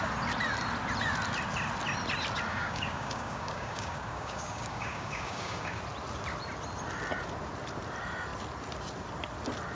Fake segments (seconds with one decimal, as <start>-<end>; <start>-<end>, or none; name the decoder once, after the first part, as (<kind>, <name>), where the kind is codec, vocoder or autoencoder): 2.5-5.8 (codec, DAC)